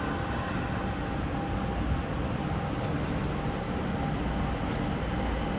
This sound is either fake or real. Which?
real